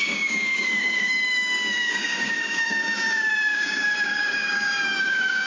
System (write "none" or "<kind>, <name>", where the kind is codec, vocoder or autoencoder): codec, DAC